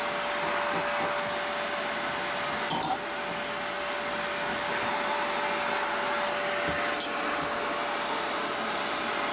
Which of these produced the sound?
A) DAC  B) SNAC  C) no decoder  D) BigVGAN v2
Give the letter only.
C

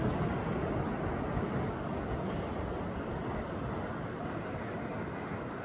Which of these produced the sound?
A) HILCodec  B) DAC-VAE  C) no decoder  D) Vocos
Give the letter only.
C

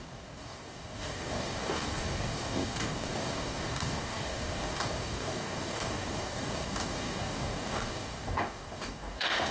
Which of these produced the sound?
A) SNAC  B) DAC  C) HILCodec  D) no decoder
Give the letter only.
B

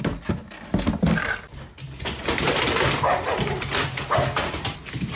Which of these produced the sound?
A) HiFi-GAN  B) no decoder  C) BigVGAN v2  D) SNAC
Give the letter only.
B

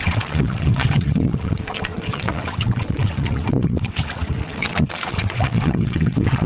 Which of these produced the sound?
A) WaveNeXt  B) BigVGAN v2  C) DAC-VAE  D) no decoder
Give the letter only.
A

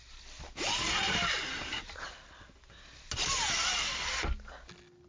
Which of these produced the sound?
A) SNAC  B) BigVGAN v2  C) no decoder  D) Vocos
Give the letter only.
C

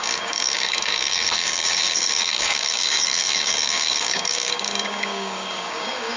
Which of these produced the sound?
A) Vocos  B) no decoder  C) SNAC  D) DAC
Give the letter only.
D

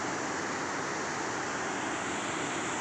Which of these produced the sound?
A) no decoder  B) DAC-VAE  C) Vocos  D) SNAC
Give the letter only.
A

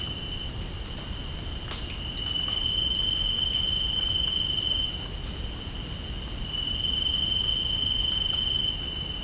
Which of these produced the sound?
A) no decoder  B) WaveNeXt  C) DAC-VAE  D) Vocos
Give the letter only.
A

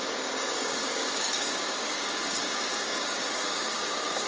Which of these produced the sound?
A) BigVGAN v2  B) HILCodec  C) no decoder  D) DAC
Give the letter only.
D